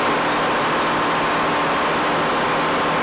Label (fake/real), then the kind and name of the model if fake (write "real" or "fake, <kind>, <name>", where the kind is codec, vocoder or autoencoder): real